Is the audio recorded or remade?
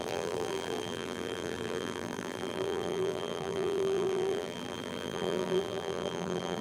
remade